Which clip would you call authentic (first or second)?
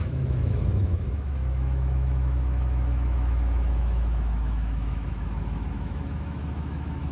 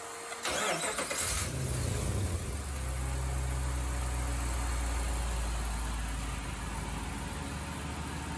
second